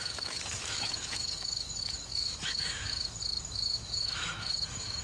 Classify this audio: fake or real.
fake